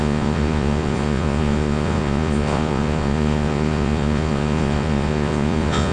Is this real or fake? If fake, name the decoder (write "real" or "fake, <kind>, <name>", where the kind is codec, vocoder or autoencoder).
fake, vocoder, Vocos